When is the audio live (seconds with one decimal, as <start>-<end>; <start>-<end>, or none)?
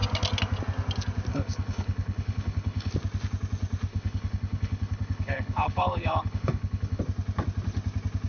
0.0-1.3; 2.9-3.9; 7.0-8.3